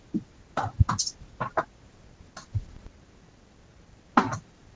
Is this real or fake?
real